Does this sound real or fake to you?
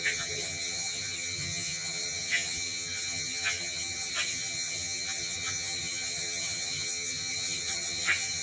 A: fake